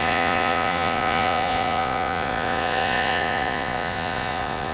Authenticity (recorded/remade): remade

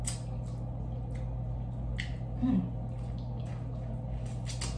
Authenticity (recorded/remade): recorded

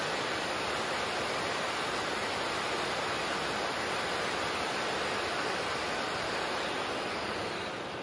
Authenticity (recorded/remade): recorded